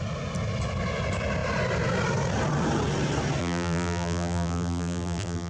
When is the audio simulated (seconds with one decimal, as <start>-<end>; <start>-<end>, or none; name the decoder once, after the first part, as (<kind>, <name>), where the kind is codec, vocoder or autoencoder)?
3.4-5.5 (vocoder, BigVGAN v2)